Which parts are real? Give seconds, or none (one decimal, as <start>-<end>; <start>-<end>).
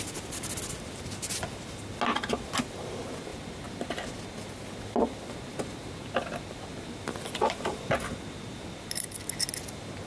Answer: 0.0-10.1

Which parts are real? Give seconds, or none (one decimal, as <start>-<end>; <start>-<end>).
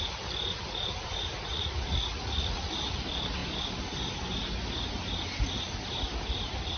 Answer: 0.0-1.5; 2.7-6.8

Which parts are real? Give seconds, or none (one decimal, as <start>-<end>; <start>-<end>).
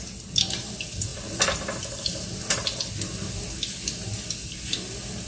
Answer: 0.0-5.3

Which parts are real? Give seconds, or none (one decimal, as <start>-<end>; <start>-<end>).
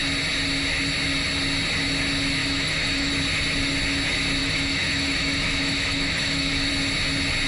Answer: 0.0-2.4; 3.1-4.4; 6.7-7.5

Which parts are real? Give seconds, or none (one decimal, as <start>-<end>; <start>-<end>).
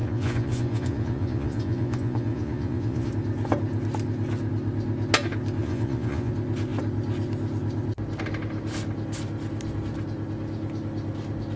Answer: 3.1-5.6; 6.3-11.6